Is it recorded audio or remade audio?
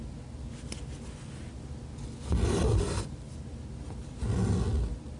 recorded